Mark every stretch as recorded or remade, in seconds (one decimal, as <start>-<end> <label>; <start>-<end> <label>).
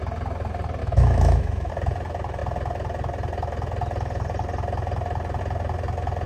0.0-0.8 recorded; 0.8-1.7 remade; 1.7-6.3 recorded